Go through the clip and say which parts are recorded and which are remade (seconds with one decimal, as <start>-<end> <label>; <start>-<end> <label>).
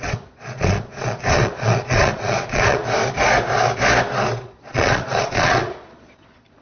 0.0-2.8 remade; 2.8-4.4 recorded; 4.4-6.6 remade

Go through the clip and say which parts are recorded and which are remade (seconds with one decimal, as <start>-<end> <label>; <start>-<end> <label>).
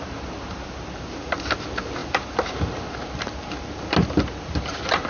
0.0-5.1 recorded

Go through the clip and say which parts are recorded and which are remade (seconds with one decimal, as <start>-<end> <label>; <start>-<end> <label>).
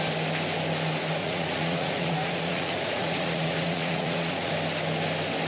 0.0-1.2 recorded; 1.2-4.5 remade; 4.5-5.5 recorded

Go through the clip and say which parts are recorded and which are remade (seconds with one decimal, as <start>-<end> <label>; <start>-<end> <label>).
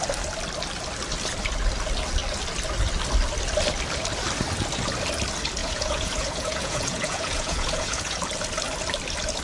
0.0-5.6 recorded; 5.6-8.2 remade; 8.2-9.4 recorded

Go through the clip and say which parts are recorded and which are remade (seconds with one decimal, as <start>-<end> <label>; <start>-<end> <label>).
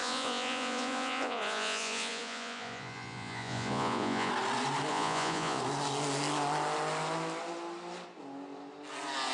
0.0-4.3 remade; 4.3-4.9 recorded; 4.9-5.6 remade; 5.6-9.3 recorded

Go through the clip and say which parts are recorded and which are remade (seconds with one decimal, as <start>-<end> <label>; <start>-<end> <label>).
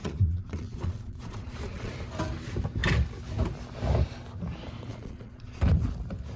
0.0-1.9 remade; 1.9-4.9 recorded; 4.9-5.6 remade; 5.6-6.4 recorded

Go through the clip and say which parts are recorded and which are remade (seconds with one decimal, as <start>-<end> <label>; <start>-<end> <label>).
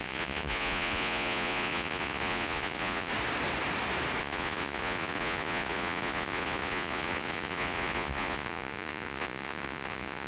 0.0-3.1 remade; 3.1-4.2 recorded; 4.2-10.3 remade